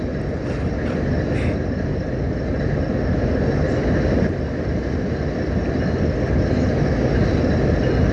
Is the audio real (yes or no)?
yes